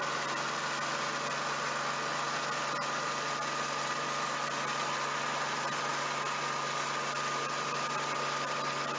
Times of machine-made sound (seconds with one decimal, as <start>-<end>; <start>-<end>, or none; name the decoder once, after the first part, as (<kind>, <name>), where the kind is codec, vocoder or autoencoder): none